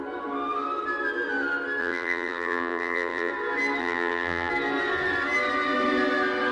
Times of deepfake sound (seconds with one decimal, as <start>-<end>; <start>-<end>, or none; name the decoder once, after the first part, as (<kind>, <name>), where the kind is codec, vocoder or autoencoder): 1.8-3.3 (vocoder, BigVGAN v2); 3.8-4.5